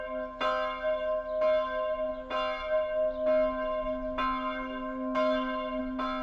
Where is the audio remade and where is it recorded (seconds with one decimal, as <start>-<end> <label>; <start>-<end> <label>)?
0.0-6.2 recorded

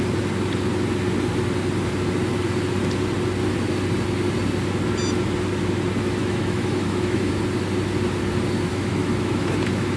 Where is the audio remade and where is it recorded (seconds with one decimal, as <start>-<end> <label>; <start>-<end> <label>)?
0.0-6.2 recorded; 6.2-7.3 remade; 7.3-8.7 recorded; 8.7-10.0 remade

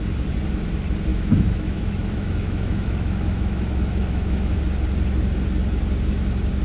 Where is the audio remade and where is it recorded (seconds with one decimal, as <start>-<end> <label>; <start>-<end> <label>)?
0.0-1.1 recorded; 1.1-4.6 remade; 4.6-6.6 recorded

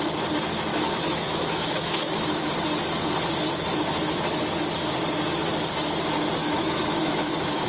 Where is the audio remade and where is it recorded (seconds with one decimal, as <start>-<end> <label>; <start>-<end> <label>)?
0.0-0.7 recorded; 0.7-2.5 remade; 2.5-3.9 recorded; 3.9-4.4 remade; 4.4-6.4 recorded; 6.4-7.7 remade

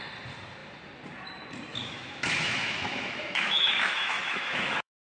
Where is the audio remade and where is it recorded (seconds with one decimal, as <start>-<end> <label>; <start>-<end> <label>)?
0.0-1.7 recorded; 1.7-5.1 remade

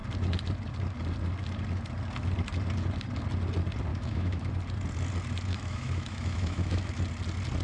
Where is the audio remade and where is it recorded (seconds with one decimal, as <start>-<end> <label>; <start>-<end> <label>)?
0.0-3.9 recorded; 3.9-4.5 remade; 4.5-5.5 recorded; 5.5-6.9 remade; 6.9-7.6 recorded

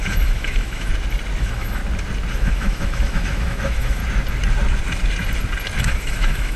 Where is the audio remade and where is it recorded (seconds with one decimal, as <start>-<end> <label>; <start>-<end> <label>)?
0.0-0.9 remade; 0.9-1.4 recorded; 1.4-1.8 remade; 1.8-2.3 recorded; 2.3-4.0 remade; 4.0-5.8 recorded; 5.8-6.6 remade

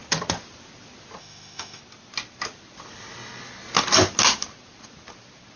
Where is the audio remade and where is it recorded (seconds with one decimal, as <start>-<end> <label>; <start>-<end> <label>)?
0.0-1.2 recorded; 1.2-1.8 remade; 1.8-5.6 recorded